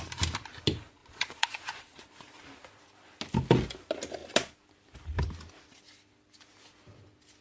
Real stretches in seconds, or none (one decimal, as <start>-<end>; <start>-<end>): 0.0-1.0; 2.0-7.4